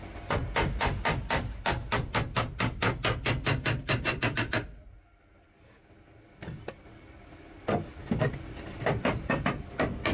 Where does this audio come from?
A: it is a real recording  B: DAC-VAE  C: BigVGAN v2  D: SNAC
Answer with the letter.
A